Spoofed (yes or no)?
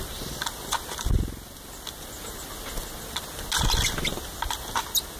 no